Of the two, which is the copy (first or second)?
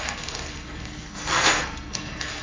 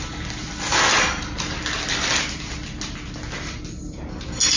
first